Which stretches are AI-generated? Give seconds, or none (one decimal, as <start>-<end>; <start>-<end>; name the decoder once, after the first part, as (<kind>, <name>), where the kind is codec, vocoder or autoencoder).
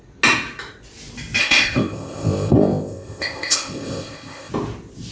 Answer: 1.4-4.5 (codec, ZipCodec)